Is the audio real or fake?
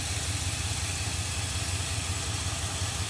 real